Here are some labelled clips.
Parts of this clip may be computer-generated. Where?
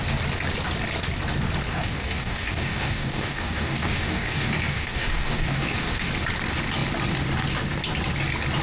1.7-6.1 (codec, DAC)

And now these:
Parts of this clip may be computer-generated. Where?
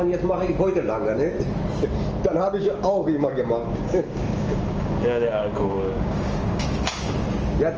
2.6-7.1 (codec, DAC)